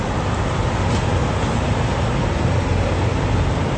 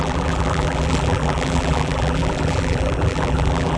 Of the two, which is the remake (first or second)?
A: second